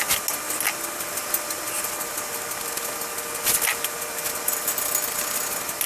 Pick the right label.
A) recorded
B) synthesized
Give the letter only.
A